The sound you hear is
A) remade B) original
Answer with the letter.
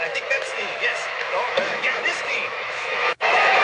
A